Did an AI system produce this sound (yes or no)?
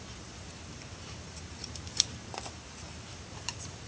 yes